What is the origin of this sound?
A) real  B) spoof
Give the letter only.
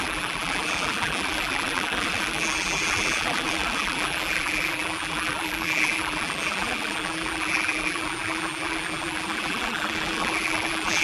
B